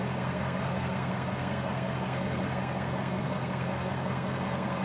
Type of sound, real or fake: fake